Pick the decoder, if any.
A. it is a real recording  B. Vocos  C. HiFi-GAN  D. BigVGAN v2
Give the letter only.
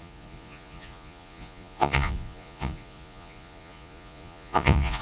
B